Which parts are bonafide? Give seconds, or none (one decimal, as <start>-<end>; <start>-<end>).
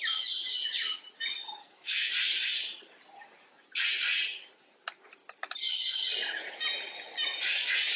0.0-1.6; 2.1-8.0